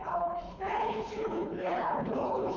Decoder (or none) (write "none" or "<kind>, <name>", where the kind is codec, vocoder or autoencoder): codec, HILCodec